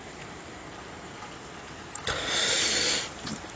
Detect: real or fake real